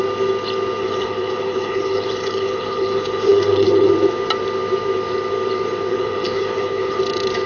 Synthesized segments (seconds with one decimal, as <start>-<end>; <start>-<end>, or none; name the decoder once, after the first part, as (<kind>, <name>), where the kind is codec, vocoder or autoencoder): 0.8-3.9 (codec, HILCodec); 5.9-7.0